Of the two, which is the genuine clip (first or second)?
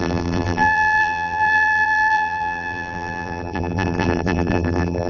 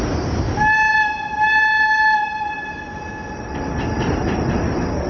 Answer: second